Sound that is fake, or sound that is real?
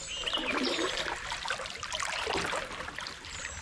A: real